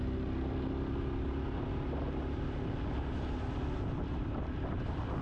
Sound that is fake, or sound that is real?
real